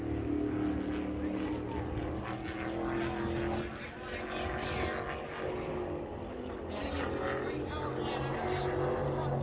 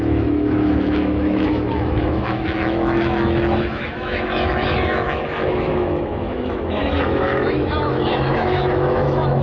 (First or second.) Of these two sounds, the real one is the first